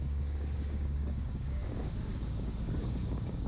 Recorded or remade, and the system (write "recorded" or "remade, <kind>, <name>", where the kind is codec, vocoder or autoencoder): remade, codec, DAC